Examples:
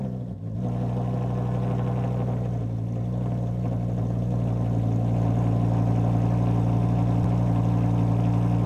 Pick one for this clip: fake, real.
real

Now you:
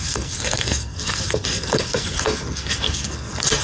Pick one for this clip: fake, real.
fake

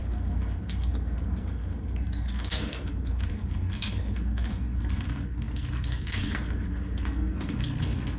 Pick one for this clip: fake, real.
fake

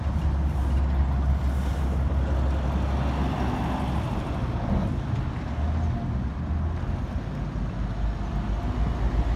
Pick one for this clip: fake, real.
real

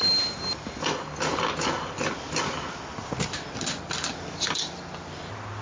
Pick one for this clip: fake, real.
real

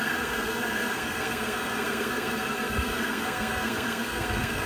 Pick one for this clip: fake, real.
fake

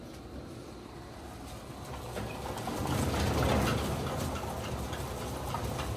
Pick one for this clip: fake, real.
real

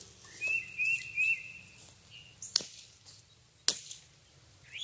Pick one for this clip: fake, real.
real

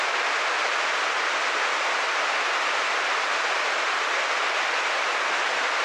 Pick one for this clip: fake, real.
real